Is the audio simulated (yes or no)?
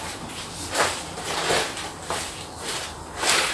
no